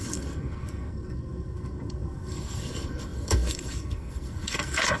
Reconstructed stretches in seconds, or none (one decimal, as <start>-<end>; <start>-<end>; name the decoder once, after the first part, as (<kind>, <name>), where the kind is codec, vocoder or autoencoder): 0.0-5.0 (codec, SNAC)